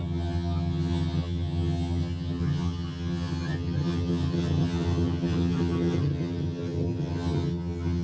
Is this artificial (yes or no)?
yes